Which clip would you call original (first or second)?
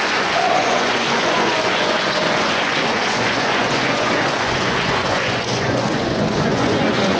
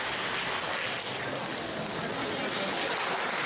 second